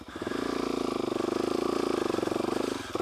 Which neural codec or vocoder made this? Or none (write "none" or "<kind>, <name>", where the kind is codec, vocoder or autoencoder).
vocoder, BigVGAN v2